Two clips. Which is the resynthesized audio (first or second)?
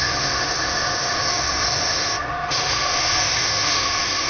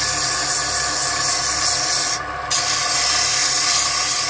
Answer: first